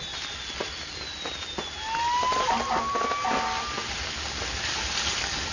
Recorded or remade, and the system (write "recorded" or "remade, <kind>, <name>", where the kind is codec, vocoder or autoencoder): recorded